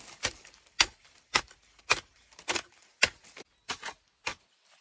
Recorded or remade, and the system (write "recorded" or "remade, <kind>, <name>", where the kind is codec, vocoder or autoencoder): recorded